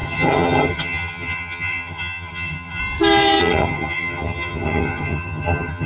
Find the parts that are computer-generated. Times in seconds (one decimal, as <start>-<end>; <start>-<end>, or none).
0.0-2.8; 3.4-5.9